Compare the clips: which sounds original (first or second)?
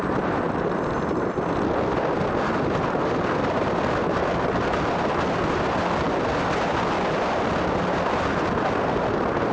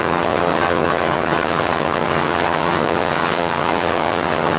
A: first